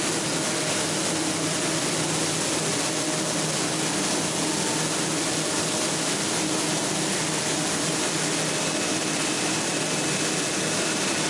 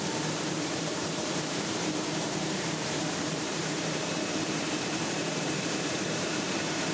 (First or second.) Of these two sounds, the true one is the first